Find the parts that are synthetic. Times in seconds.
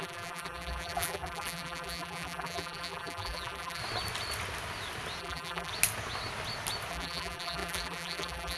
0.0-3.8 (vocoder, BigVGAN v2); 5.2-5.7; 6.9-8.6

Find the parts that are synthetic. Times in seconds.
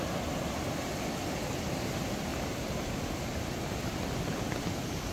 2.3-4.0 (vocoder, BigVGAN v2)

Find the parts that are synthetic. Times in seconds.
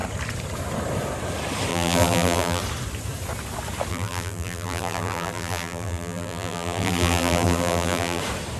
1.7-2.6 (vocoder, BigVGAN v2); 3.9-8.2